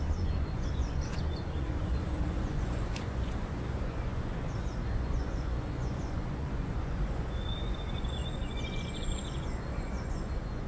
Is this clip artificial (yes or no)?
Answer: yes